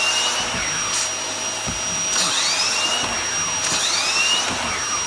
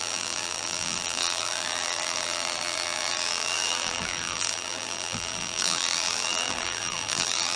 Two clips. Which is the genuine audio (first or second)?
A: first